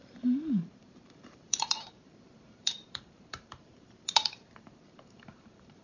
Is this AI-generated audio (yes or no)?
yes